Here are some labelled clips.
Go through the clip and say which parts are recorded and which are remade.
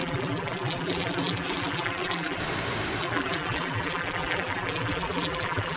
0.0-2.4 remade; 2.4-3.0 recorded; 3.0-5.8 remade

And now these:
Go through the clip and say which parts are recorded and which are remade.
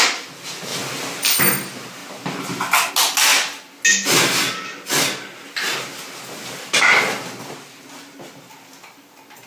0.0-9.5 recorded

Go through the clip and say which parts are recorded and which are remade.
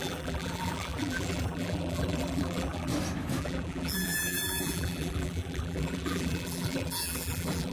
0.0-2.9 remade; 2.9-3.4 recorded; 3.4-7.7 remade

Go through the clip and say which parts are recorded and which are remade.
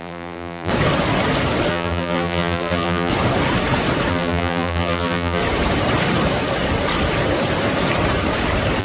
0.0-0.7 remade; 0.7-1.7 recorded; 1.7-3.1 remade; 3.1-4.1 recorded; 4.1-5.4 remade; 5.4-8.8 recorded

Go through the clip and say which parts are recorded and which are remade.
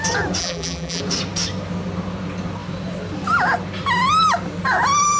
0.0-0.4 recorded; 0.4-1.0 remade; 1.0-5.2 recorded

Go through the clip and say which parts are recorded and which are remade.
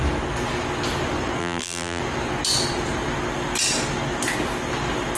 0.0-1.4 recorded; 1.4-2.0 remade; 2.0-5.2 recorded